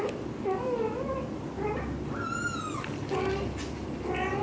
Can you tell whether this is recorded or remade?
recorded